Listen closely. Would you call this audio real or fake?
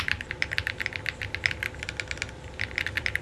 real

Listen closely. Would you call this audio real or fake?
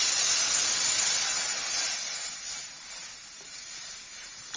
real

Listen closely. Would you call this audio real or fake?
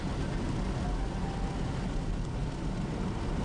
real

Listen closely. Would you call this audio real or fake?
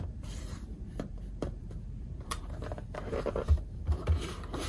fake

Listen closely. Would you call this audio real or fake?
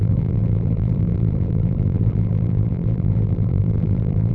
fake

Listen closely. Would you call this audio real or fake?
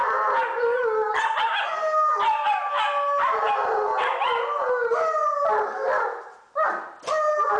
real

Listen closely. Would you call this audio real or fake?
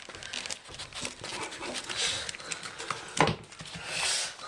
real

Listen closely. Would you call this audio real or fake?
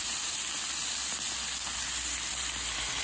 real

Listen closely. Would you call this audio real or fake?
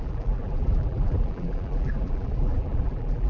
fake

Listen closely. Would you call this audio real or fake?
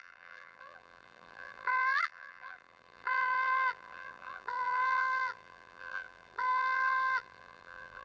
fake